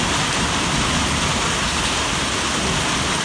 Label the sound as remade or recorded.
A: recorded